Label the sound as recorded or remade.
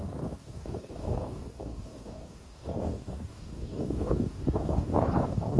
remade